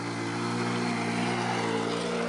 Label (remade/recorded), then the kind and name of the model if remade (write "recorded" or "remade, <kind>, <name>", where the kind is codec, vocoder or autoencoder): recorded